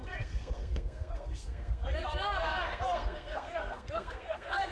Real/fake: fake